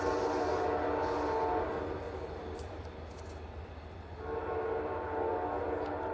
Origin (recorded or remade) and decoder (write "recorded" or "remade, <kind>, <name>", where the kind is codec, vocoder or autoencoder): recorded